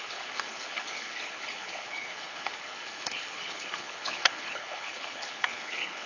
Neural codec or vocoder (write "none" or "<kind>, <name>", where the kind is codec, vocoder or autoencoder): codec, HILCodec